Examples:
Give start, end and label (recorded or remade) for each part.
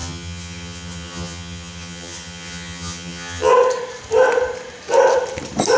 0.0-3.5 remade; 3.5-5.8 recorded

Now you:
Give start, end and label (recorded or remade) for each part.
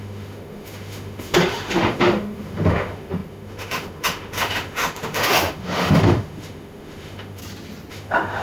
0.0-7.4 remade; 7.4-7.9 recorded; 7.9-8.4 remade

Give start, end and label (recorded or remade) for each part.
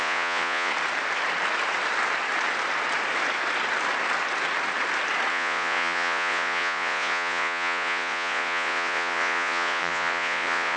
0.0-0.7 remade; 0.7-5.3 recorded; 5.3-10.8 remade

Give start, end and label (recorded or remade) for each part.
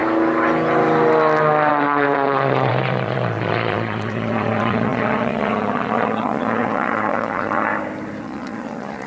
0.0-1.7 recorded; 1.7-7.7 remade; 7.7-8.2 recorded; 8.2-9.1 remade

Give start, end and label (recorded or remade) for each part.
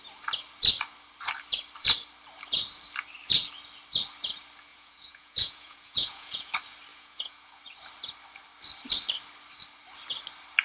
0.0-4.7 recorded; 4.7-6.5 remade; 6.5-6.9 recorded; 6.9-7.6 remade; 7.6-10.6 recorded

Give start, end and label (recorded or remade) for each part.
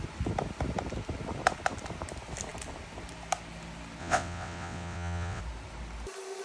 0.0-4.0 recorded; 4.0-5.4 remade; 5.4-6.4 recorded